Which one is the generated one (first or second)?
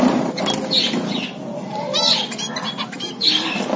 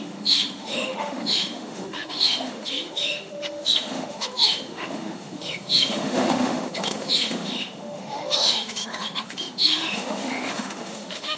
second